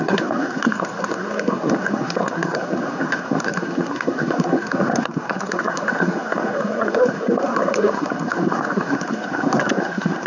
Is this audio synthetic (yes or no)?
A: yes